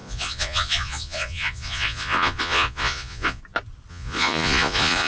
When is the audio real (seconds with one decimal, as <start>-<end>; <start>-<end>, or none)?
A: 3.4-3.9